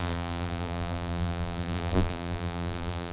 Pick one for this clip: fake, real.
fake